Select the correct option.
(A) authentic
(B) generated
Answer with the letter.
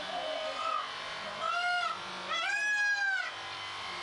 A